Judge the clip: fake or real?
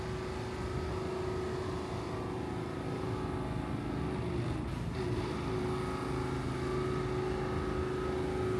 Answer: real